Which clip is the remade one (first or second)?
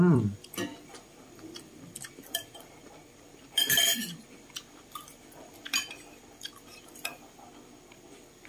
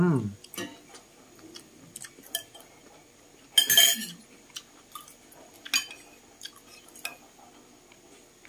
first